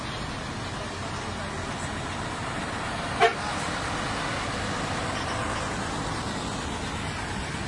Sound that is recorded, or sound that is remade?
recorded